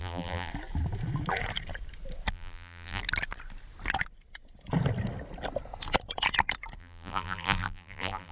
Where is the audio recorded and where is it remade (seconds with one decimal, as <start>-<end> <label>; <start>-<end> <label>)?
0.0-0.5 remade; 0.5-2.3 recorded; 2.3-3.0 remade; 3.0-6.8 recorded; 6.8-8.3 remade